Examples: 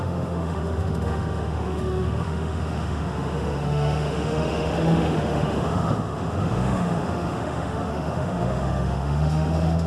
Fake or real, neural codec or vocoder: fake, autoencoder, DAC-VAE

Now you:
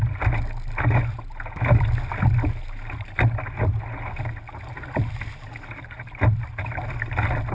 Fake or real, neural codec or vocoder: real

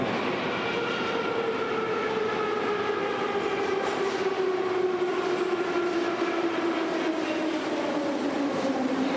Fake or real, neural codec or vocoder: real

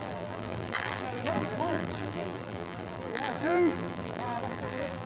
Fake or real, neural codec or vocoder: fake, vocoder, BigVGAN v2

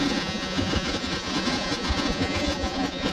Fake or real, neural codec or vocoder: fake, vocoder, Vocos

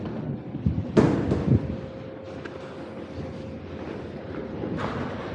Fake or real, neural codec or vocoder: real